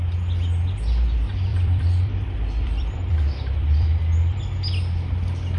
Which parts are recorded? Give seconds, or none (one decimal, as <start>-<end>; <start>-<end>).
0.0-1.5; 4.4-5.6